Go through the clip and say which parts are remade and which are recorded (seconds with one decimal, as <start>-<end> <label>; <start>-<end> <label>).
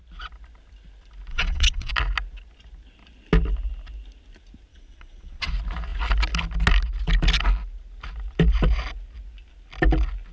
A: 0.0-1.3 recorded; 1.3-1.9 remade; 1.9-4.7 recorded; 4.7-5.5 remade; 5.5-10.3 recorded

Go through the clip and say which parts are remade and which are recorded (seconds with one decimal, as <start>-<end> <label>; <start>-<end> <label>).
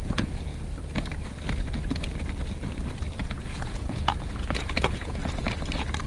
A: 0.0-0.5 remade; 0.5-3.2 recorded; 3.2-5.2 remade; 5.2-6.1 recorded